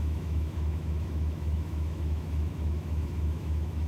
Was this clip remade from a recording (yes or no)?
yes